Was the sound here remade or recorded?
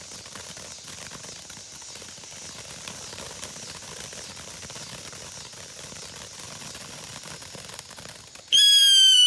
recorded